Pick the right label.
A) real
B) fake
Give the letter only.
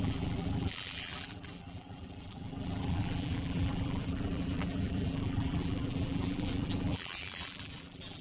B